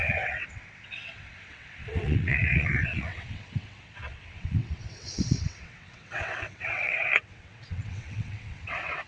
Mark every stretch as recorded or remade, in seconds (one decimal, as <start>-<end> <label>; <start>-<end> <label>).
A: 0.0-9.1 remade